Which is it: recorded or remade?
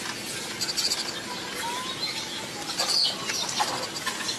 recorded